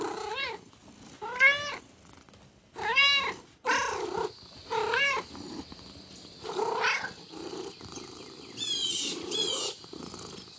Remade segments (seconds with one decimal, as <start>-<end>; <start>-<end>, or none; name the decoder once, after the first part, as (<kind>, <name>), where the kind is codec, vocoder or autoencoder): 8.8-9.5 (vocoder, Vocos)